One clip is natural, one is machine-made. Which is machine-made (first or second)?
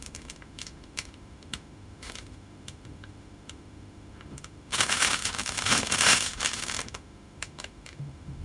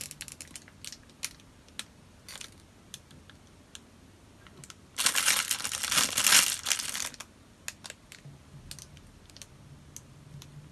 first